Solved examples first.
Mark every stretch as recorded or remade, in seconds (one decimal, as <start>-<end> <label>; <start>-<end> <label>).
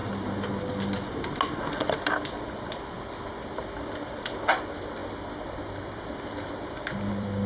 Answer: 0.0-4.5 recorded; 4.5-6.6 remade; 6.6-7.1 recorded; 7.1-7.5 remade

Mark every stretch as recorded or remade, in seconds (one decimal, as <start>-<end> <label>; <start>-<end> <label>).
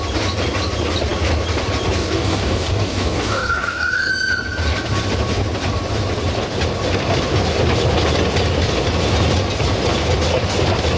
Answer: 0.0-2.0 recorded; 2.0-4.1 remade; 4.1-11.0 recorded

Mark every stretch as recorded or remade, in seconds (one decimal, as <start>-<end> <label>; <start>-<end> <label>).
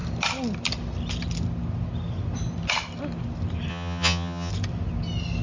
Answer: 0.0-3.7 recorded; 3.7-4.5 remade; 4.5-5.4 recorded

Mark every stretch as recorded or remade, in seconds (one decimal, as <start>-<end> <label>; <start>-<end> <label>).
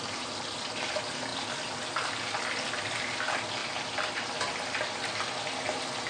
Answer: 0.0-6.1 recorded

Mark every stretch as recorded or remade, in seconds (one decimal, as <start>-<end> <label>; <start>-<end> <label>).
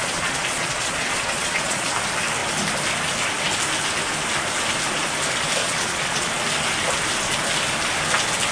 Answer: 0.0-1.9 remade; 1.9-5.6 recorded; 5.6-6.3 remade; 6.3-8.5 recorded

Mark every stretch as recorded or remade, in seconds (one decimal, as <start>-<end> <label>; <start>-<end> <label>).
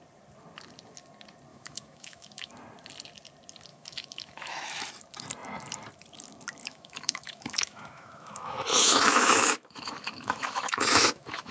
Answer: 0.0-1.5 recorded; 1.5-2.5 remade; 2.5-3.7 recorded; 3.7-4.9 remade; 4.9-6.6 recorded; 6.6-11.5 remade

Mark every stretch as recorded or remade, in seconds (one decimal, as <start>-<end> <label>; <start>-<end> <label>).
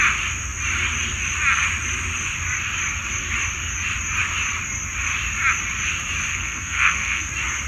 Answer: 0.0-6.3 recorded; 6.3-7.3 remade; 7.3-7.7 recorded